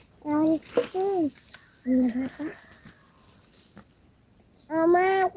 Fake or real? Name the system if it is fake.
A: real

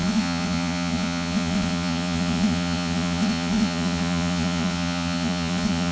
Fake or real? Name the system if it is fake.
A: fake, vocoder, Vocos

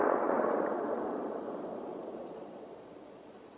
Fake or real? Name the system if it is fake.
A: fake, vocoder, Vocos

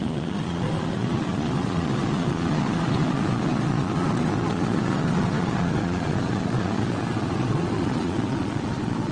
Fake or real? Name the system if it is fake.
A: fake, vocoder, Vocos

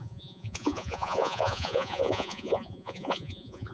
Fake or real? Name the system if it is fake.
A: fake, vocoder, Vocos